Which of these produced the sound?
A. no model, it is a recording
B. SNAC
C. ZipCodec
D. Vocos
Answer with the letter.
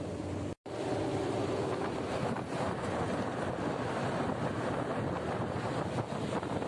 A